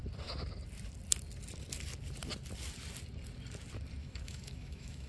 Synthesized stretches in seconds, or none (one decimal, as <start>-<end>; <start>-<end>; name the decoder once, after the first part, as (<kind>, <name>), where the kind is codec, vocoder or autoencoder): 4.0-5.1 (autoencoder, DAC-VAE)